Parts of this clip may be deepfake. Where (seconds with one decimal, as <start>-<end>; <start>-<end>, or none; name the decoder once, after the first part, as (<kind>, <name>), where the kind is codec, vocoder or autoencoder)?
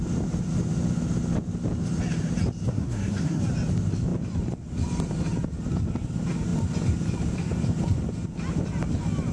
2.7-3.4 (codec, SNAC)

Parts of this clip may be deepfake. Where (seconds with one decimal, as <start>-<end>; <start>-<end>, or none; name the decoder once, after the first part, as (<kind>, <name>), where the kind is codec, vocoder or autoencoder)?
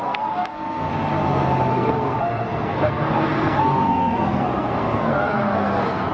0.0-0.9 (codec, SNAC); 1.7-6.1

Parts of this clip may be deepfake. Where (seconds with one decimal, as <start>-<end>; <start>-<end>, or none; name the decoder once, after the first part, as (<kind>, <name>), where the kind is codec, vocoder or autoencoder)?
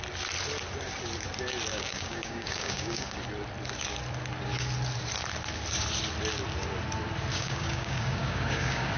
1.7-3.1 (codec, DAC); 7.3-9.0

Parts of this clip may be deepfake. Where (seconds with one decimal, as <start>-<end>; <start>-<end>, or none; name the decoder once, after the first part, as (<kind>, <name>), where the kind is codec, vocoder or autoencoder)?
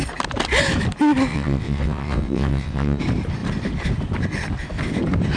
1.3-3.0 (vocoder, WaveNeXt)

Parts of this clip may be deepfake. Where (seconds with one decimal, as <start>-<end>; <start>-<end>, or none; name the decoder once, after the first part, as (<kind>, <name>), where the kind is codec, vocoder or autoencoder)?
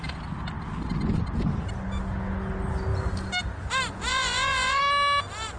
4.1-4.8 (vocoder, Vocos)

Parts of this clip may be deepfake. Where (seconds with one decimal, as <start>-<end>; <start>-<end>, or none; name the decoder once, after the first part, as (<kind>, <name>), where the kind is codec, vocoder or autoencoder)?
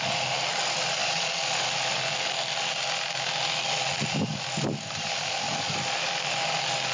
none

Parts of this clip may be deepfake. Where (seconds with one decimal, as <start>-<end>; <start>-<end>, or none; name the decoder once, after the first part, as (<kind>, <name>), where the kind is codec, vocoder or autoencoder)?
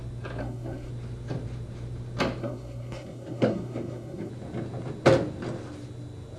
0.4-0.9 (codec, SNAC); 2.4-4.3